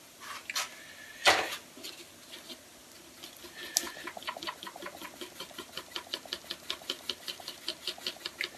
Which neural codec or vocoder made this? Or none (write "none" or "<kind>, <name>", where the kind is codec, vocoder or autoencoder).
none